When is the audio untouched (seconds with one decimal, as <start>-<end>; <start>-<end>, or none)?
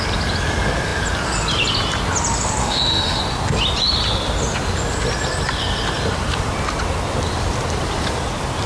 0.0-2.6; 3.2-8.7